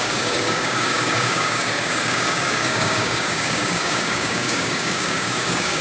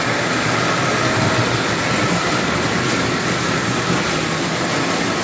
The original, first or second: second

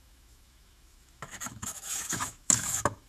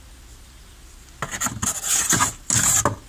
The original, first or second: second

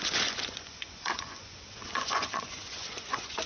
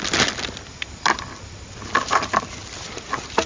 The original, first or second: second